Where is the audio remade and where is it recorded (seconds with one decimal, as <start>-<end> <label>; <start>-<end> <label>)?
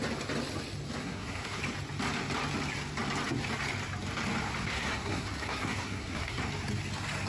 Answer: 0.0-1.0 recorded; 1.0-1.6 remade; 1.6-4.6 recorded; 4.6-6.4 remade; 6.4-7.3 recorded